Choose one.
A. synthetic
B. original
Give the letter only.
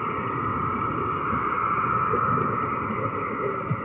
B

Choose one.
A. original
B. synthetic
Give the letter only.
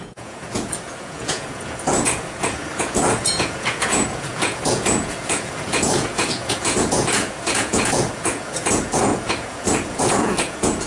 B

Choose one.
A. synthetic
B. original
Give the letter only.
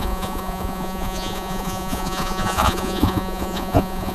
A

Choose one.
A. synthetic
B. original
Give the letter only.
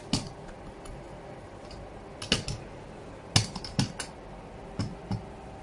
B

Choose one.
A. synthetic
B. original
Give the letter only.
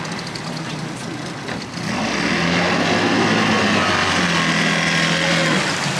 B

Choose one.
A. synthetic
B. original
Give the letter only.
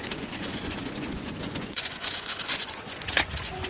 A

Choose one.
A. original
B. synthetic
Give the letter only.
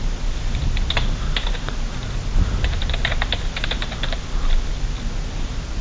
A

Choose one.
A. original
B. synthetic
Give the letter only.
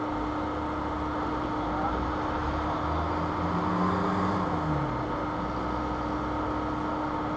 A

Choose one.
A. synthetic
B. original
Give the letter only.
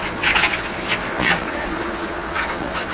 A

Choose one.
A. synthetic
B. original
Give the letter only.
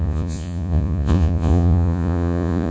A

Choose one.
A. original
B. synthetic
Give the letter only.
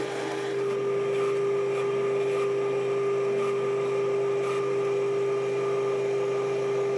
A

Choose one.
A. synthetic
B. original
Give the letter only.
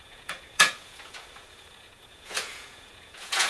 A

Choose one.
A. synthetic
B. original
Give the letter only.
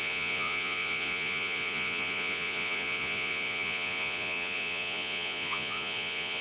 A